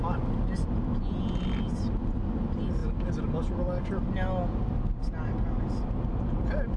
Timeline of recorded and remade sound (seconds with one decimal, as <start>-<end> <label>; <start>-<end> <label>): 0.0-6.8 recorded